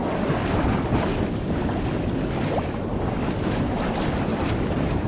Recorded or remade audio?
recorded